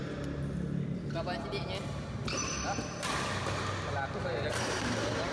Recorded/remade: recorded